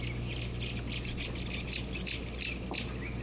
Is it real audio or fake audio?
real